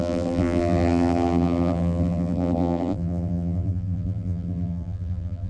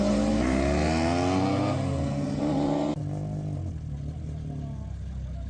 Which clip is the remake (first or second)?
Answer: first